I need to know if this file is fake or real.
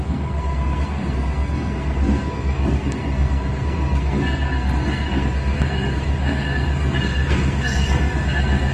fake